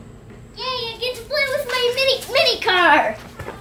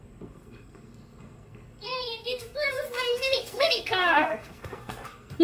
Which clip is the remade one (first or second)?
second